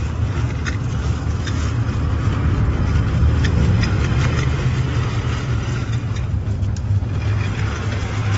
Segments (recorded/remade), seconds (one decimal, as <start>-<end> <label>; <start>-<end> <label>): 0.0-1.0 recorded; 1.0-1.6 remade; 1.6-8.4 recorded